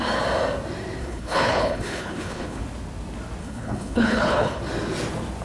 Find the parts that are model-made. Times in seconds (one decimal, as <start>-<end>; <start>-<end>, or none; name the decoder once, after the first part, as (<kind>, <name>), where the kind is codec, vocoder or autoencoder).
1.0-2.6 (codec, HILCodec); 3.4-4.6